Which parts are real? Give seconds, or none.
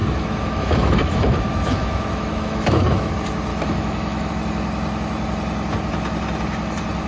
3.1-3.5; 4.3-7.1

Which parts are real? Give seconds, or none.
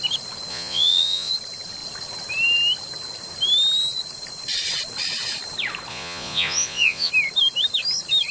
0.0-0.5; 1.3-5.9; 7.1-8.3